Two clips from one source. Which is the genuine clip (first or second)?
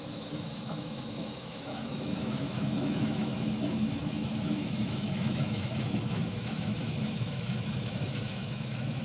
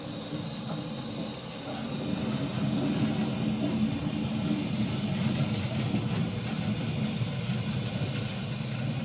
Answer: second